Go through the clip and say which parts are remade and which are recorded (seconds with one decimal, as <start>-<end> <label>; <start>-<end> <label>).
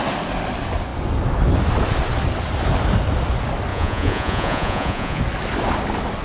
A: 0.0-3.7 recorded; 3.7-5.2 remade; 5.2-6.2 recorded